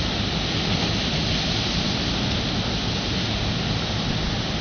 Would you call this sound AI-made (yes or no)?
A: no